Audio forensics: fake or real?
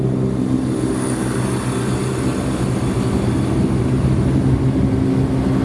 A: real